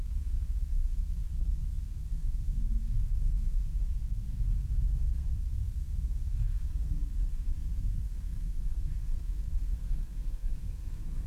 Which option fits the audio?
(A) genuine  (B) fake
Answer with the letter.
B